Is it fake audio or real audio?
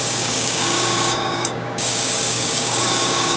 fake